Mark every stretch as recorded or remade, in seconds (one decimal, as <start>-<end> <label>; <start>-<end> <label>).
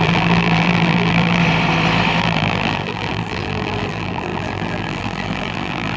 0.0-1.4 remade; 1.4-2.2 recorded; 2.2-6.0 remade